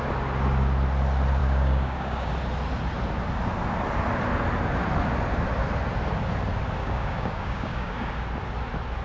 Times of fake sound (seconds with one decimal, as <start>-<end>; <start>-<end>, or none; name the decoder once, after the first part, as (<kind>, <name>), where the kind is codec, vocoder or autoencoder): 1.4-2.3 (codec, DAC); 6.8-8.1